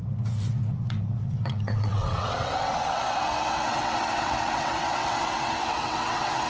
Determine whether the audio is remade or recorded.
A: remade